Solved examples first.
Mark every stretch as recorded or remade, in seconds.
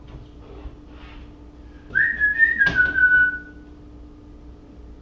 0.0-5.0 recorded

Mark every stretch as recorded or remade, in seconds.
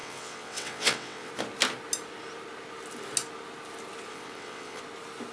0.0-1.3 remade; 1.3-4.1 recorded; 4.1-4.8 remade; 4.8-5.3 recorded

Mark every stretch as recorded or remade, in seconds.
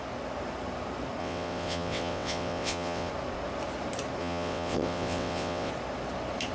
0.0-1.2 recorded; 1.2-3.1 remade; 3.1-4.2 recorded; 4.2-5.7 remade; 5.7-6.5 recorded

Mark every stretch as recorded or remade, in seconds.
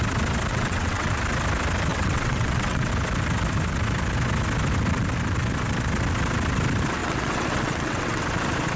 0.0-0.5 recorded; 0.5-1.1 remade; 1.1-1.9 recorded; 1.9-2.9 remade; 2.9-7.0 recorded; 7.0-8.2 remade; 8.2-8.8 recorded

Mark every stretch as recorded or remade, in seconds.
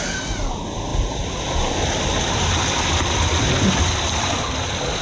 0.0-5.0 recorded